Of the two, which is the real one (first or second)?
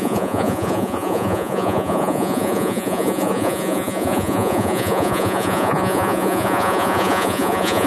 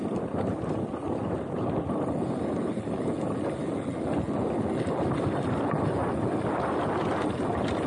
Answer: second